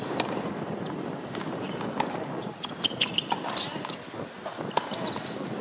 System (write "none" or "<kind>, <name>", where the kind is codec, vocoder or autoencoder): none